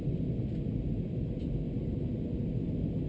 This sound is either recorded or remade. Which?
recorded